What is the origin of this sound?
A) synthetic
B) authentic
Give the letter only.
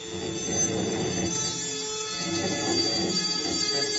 B